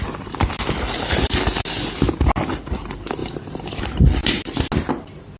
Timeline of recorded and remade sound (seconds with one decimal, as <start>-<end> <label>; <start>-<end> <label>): 0.0-5.4 recorded